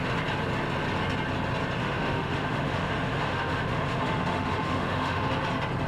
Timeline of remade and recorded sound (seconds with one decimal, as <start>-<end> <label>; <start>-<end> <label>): 0.0-1.8 recorded; 1.8-5.3 remade; 5.3-5.9 recorded